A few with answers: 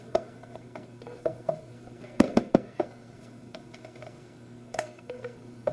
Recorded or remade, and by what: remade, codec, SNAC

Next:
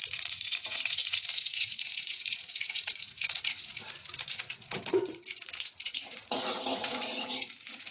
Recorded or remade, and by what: remade, vocoder, Vocos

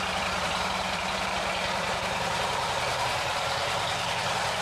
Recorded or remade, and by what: remade, vocoder, BigVGAN v2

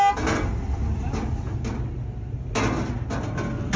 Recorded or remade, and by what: recorded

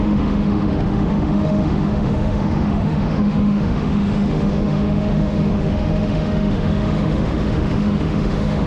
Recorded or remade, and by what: remade, autoencoder, DAC-VAE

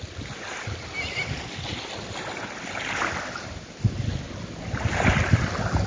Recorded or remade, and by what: recorded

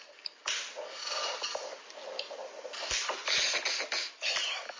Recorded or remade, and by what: recorded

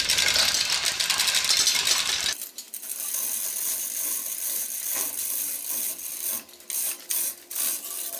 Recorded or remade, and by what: recorded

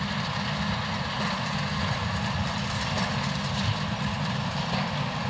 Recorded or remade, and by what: recorded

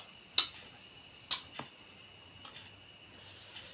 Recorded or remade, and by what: recorded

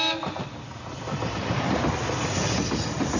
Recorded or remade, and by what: recorded